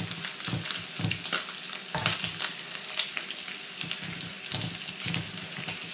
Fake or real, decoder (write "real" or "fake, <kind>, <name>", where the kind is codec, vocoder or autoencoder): real